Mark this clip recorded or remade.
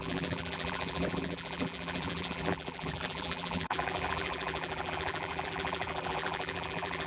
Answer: remade